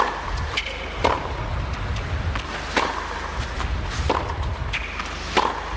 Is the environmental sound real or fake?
real